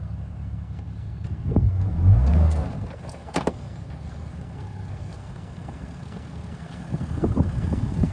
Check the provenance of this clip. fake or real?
fake